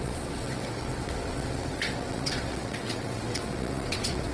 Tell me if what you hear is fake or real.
fake